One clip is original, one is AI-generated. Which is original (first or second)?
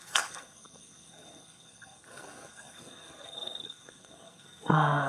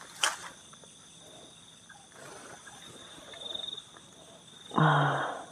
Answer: second